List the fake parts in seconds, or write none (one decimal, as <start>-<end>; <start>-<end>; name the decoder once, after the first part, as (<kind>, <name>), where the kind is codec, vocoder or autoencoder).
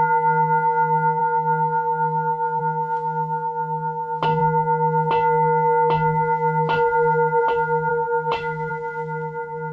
1.2-2.6 (autoencoder, DAC-VAE); 7.9-8.7